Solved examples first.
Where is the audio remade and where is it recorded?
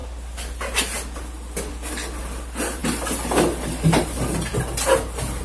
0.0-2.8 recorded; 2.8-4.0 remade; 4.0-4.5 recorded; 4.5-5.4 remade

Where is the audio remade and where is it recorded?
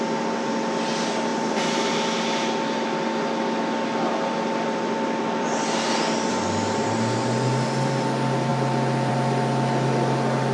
0.0-1.3 recorded; 1.3-2.0 remade; 2.0-10.5 recorded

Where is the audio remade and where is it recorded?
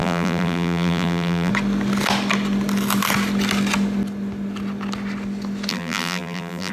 0.0-1.5 remade; 1.5-5.7 recorded; 5.7-6.7 remade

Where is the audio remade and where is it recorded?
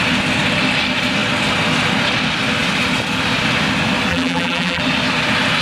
0.0-4.1 recorded; 4.1-4.8 remade; 4.8-5.6 recorded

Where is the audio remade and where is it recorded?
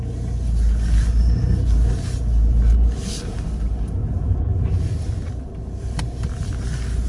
0.0-4.0 recorded; 4.0-6.0 remade; 6.0-7.1 recorded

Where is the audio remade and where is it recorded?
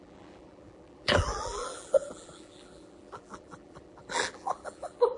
0.0-5.2 remade